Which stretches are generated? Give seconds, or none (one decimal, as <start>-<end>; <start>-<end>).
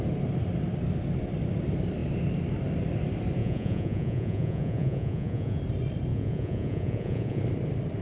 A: 3.4-5.6; 6.1-7.4